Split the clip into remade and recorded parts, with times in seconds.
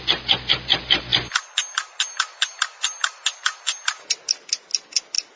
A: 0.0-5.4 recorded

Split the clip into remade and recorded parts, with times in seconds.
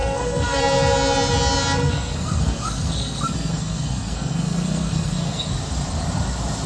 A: 0.0-0.6 remade; 0.6-1.8 recorded; 1.8-5.5 remade; 5.5-6.7 recorded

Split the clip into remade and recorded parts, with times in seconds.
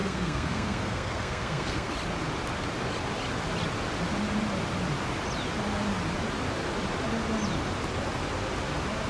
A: 0.0-1.9 remade; 1.9-9.1 recorded